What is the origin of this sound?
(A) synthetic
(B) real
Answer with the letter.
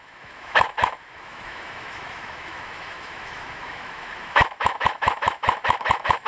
A